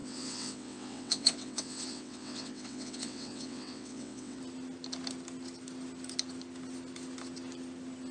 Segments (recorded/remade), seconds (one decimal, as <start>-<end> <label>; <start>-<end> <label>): 0.0-4.4 remade; 4.4-8.1 recorded